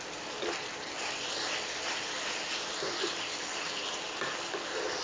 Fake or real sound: real